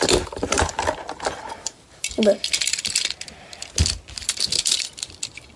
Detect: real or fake real